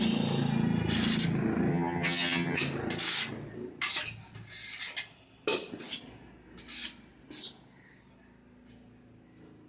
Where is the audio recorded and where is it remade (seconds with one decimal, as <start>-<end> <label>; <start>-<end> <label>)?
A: 0.0-1.7 recorded; 1.7-2.6 remade; 2.6-9.7 recorded